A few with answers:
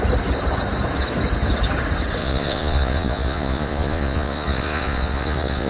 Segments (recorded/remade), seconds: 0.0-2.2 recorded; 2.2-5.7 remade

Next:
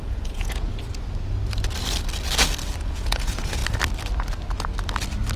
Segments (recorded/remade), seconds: 0.0-0.7 remade; 0.7-2.8 recorded; 2.8-3.6 remade; 3.6-5.4 recorded

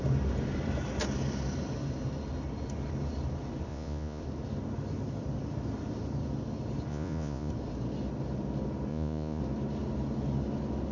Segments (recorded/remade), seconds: 0.0-3.7 recorded; 3.7-4.2 remade; 4.2-6.9 recorded; 6.9-7.5 remade; 7.5-8.9 recorded; 8.9-9.4 remade; 9.4-10.9 recorded